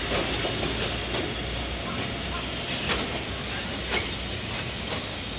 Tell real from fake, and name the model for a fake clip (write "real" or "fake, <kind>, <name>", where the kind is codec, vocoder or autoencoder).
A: real